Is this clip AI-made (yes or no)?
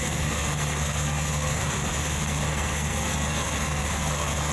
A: yes